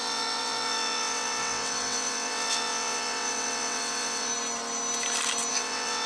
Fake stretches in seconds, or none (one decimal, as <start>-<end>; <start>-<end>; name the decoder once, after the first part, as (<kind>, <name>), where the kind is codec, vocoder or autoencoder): 0.0-4.3 (vocoder, WaveNeXt); 5.5-6.1